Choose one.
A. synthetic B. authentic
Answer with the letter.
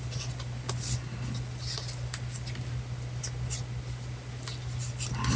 B